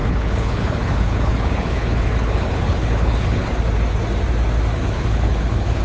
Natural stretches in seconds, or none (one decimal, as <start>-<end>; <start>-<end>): 3.5-4.7